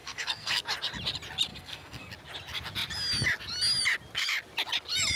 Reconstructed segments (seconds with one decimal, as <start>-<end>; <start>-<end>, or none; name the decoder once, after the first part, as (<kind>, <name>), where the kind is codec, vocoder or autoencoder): 0.0-0.6 (codec, SNAC); 1.5-2.1